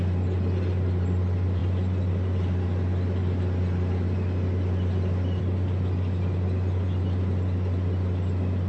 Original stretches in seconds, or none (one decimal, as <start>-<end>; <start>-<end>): 0.0-8.7